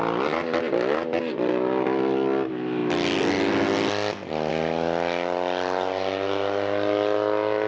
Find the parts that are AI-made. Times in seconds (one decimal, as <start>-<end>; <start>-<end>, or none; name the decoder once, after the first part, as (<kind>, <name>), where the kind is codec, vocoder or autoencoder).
none